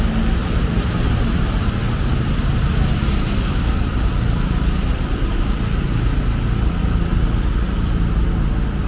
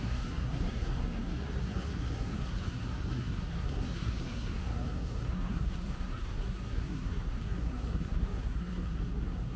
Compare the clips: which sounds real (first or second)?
first